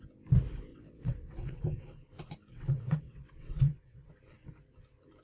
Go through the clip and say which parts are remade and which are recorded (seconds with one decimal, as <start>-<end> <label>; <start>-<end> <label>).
0.0-0.7 recorded; 0.7-1.6 remade; 1.6-2.5 recorded; 2.5-4.1 remade; 4.1-5.2 recorded